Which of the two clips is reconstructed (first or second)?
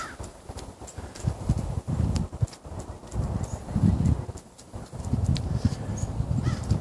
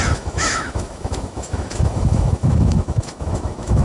second